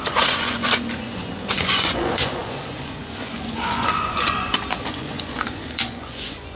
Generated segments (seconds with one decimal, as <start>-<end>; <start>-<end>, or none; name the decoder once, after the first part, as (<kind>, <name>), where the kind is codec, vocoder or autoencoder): 0.0-6.6 (vocoder, Vocos)